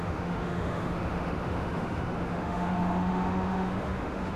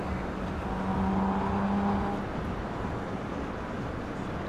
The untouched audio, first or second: second